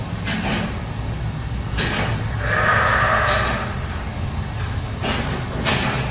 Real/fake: real